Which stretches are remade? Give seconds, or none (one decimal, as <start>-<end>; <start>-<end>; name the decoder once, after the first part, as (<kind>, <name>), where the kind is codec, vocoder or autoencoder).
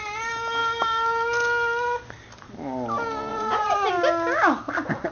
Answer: 3.3-3.9 (vocoder, Vocos)